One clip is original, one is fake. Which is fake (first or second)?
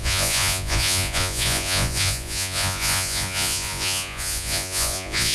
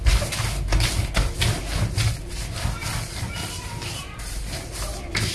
first